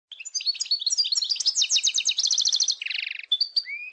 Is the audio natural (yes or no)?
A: yes